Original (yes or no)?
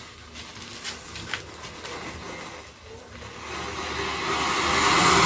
yes